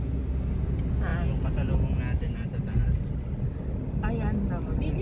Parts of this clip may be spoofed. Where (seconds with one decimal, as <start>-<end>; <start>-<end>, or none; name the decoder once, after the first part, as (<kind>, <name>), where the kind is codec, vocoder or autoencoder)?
none